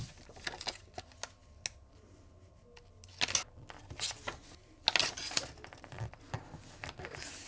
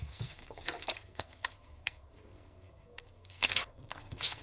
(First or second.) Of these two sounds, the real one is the first